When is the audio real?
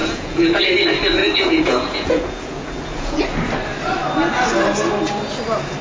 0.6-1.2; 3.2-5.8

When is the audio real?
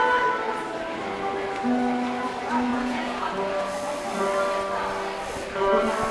0.0-2.7; 3.3-6.1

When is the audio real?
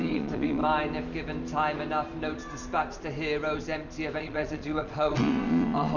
0.6-4.2